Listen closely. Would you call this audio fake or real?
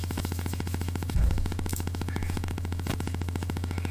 fake